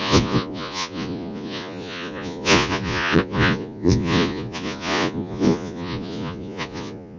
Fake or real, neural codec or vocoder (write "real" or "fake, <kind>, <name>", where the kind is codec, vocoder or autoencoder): fake, vocoder, Vocos